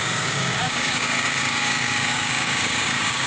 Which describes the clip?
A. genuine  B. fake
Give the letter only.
B